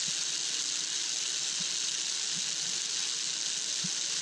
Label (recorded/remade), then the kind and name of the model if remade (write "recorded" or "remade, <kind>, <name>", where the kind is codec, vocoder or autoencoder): recorded